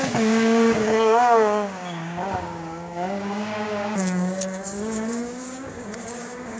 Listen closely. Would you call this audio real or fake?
fake